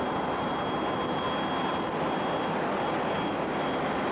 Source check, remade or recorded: recorded